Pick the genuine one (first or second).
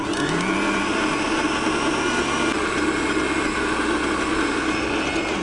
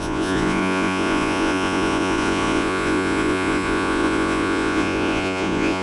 first